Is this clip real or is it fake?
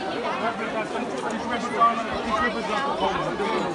real